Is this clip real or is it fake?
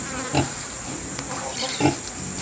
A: real